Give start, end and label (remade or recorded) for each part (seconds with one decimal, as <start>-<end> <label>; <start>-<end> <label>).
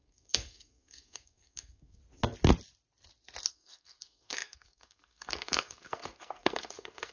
0.0-2.0 remade; 2.0-3.5 recorded; 3.5-7.1 remade